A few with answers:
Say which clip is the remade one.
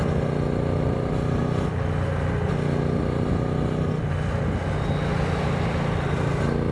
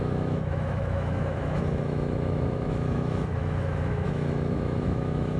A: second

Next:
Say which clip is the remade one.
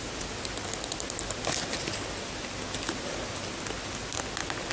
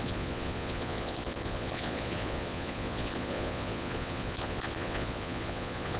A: second